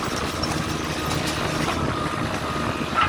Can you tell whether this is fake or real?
real